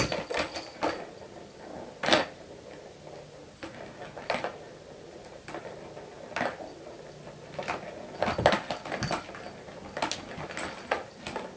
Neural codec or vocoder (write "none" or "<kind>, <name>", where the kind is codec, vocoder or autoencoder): none